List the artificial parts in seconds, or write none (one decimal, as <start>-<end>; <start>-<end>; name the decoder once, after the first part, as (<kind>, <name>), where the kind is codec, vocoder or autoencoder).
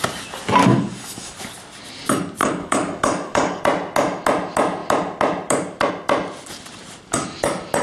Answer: 0.6-1.4 (codec, DAC); 2.4-3.6